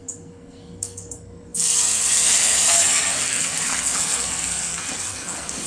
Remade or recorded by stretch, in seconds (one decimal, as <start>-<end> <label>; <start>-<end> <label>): 0.0-5.7 remade